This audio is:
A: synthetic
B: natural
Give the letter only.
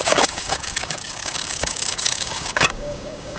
A